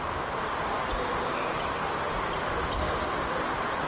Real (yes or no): yes